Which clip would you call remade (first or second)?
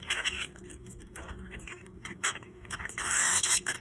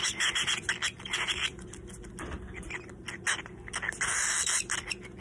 first